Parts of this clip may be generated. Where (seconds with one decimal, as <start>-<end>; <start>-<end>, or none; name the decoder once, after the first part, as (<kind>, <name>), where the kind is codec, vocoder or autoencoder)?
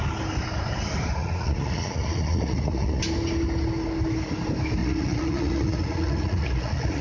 1.2-3.0 (vocoder, Vocos); 4.8-7.0